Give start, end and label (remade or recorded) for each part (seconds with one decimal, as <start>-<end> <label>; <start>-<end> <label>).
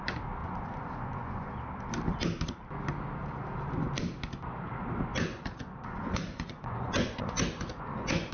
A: 0.0-0.4 recorded; 0.4-1.5 remade; 1.5-5.1 recorded; 5.1-8.3 remade